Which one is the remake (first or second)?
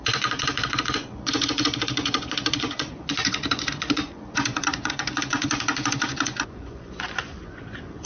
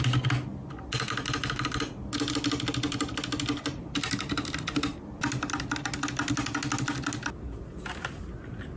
first